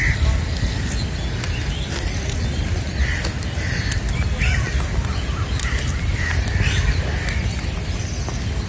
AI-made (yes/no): no